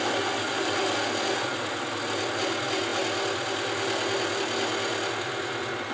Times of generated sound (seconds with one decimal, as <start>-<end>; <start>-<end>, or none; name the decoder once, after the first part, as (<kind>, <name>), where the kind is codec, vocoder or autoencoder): none